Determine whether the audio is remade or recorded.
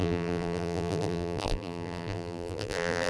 remade